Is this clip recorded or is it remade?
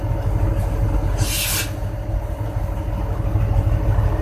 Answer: recorded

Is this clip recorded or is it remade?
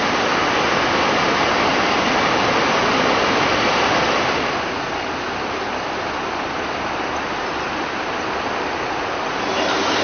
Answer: recorded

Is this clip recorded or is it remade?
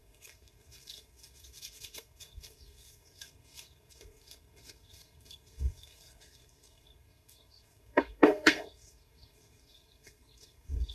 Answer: remade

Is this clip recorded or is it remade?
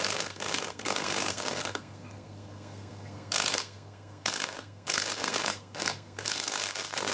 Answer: remade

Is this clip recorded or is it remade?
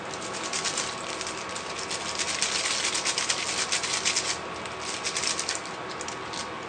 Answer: recorded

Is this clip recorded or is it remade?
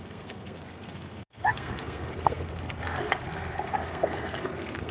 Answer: remade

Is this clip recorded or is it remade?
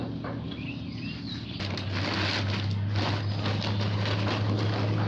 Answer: recorded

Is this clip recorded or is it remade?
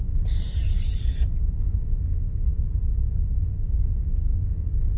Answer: recorded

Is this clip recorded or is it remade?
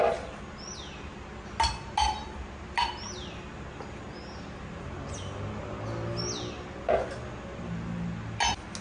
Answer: recorded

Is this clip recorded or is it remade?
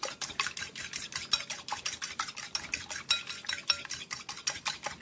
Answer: recorded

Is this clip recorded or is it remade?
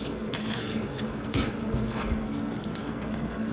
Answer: remade